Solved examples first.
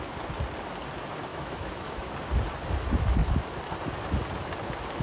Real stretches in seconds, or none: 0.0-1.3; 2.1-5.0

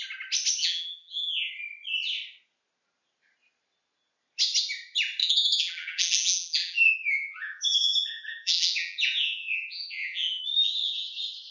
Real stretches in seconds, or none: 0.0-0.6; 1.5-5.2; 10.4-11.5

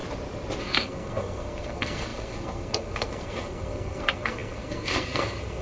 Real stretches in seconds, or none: 0.0-0.6

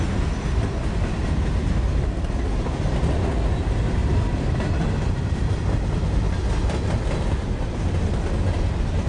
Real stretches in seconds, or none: 0.0-9.1